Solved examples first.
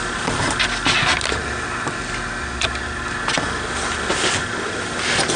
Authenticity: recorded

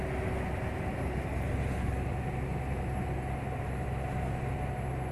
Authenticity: recorded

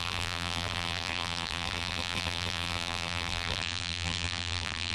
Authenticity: remade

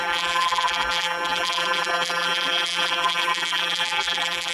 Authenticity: remade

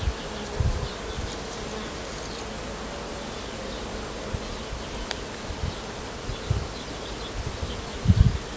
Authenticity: recorded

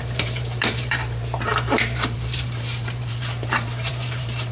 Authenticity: remade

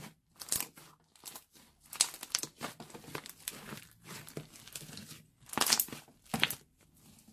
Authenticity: recorded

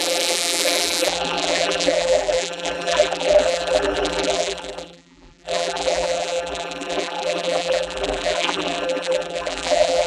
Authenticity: remade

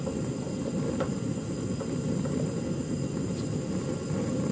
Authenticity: recorded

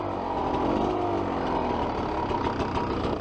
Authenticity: recorded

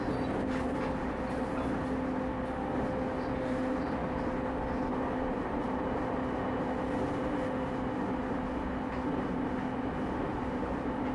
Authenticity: recorded